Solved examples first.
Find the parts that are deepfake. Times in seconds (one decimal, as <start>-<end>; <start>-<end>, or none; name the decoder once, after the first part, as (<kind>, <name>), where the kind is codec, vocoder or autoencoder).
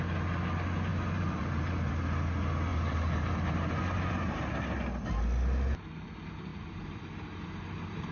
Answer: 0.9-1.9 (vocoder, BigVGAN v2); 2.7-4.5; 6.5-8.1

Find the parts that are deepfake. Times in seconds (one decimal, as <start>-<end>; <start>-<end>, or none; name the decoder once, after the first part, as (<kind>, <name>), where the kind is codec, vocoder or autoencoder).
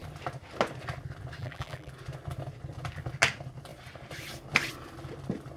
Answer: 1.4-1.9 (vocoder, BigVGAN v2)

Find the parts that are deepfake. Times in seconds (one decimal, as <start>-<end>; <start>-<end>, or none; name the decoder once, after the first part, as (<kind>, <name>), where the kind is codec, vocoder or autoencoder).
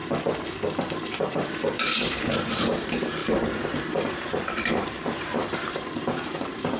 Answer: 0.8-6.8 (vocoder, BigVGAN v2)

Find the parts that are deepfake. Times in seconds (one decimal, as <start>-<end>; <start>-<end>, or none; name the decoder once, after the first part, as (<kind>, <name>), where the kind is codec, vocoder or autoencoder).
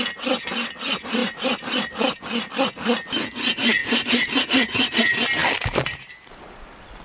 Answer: 1.2-2.5 (vocoder, BigVGAN v2); 3.8-5.0; 5.4-6.6